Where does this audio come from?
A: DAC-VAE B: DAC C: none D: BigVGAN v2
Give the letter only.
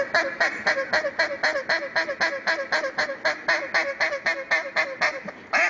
C